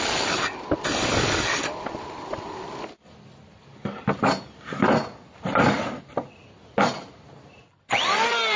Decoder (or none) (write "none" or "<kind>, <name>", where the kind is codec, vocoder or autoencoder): none